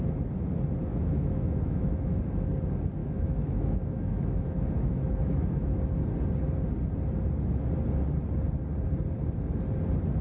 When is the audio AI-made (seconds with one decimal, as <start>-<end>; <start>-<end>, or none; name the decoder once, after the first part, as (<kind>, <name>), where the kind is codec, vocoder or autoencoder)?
0.9-2.2 (autoencoder, DAC-VAE); 3.0-5.8